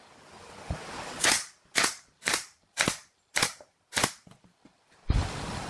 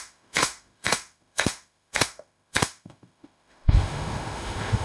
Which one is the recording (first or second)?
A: first